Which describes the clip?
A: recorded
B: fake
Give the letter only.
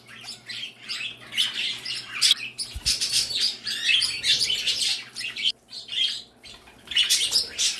B